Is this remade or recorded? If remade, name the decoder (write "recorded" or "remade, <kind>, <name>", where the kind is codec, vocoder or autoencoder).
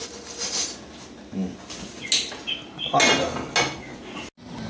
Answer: recorded